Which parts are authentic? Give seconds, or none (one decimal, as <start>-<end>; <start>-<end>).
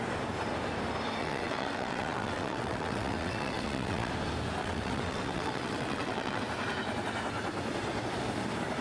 0.0-1.2; 4.1-4.6; 6.4-8.8